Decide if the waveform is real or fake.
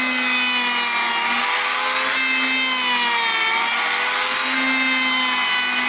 real